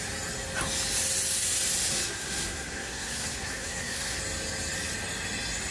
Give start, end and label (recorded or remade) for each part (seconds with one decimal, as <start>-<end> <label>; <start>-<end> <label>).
0.0-1.9 recorded; 1.9-4.2 remade; 4.2-5.7 recorded